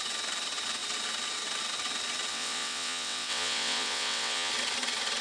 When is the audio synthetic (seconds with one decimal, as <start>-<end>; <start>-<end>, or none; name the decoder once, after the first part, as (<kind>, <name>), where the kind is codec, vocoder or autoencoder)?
2.3-4.5 (vocoder, WaveNeXt)